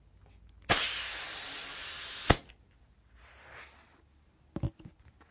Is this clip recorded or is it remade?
recorded